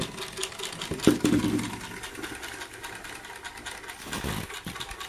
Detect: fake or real real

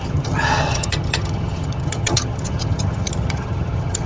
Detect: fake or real fake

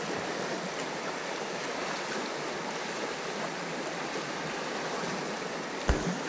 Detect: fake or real real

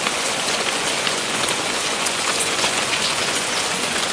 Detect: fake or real fake